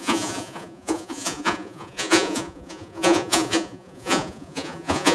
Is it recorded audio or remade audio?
remade